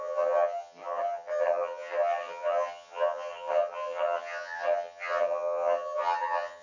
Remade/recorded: remade